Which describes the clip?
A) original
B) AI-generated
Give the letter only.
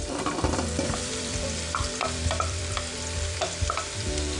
B